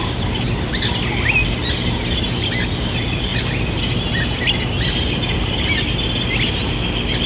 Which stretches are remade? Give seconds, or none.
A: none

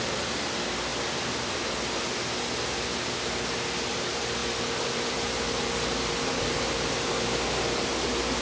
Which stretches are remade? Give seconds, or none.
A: none

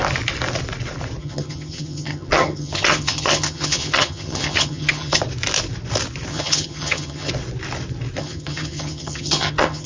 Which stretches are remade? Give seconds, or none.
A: 1.2-5.2; 6.3-7.3; 8.2-9.9

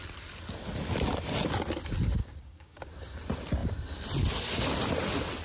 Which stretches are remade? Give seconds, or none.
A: 2.2-2.8

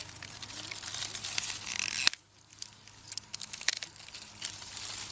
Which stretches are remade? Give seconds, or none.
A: 3.3-3.8

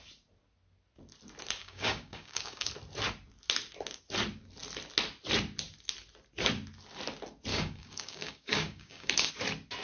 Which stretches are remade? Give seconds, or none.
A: 1.6-2.7; 7.5-9.3

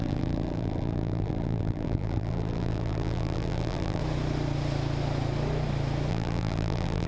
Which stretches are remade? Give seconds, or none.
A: 0.0-4.0; 6.1-7.1

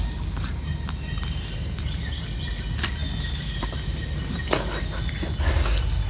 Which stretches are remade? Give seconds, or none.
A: none